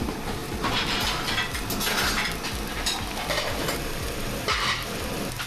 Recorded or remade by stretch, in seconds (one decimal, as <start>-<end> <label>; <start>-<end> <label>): 0.0-0.4 remade; 0.4-2.7 recorded; 2.7-5.5 remade